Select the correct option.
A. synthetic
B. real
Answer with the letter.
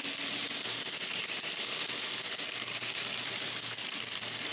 B